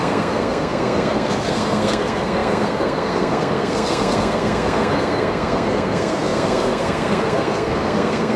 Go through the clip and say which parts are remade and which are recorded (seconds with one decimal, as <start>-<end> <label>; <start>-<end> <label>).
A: 0.0-8.4 remade